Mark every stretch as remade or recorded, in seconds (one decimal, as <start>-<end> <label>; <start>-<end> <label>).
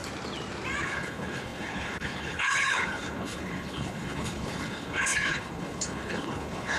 0.0-0.8 recorded; 0.8-6.8 remade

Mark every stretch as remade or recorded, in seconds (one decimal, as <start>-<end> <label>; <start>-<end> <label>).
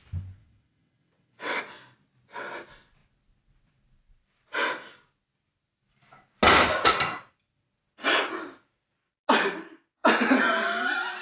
0.0-0.4 recorded; 0.4-1.6 remade; 1.6-11.2 recorded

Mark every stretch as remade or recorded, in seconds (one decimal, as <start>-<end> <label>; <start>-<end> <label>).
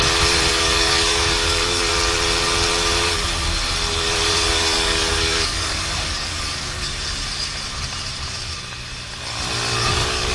0.0-0.5 recorded; 0.5-1.9 remade; 1.9-4.3 recorded; 4.3-6.9 remade; 6.9-9.8 recorded; 9.8-10.3 remade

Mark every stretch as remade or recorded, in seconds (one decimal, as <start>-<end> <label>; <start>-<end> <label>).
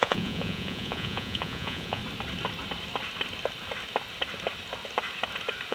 0.0-2.0 remade; 2.0-5.7 recorded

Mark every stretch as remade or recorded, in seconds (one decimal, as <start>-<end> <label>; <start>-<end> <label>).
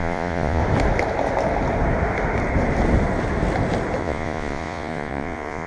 0.0-0.6 remade; 0.6-4.0 recorded; 4.0-5.7 remade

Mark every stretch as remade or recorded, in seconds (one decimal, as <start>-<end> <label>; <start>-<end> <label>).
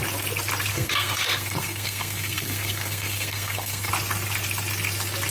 0.0-0.7 recorded; 0.7-3.9 remade; 3.9-5.3 recorded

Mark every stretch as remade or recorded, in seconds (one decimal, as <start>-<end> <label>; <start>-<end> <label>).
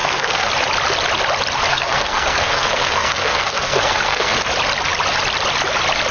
0.0-0.5 remade; 0.5-1.7 recorded; 1.7-4.4 remade; 4.4-6.1 recorded